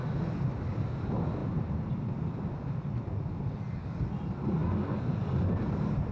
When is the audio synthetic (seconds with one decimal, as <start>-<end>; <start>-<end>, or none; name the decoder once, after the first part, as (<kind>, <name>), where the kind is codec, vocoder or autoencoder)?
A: none